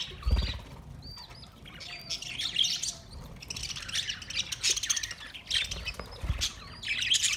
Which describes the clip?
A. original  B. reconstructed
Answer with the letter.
A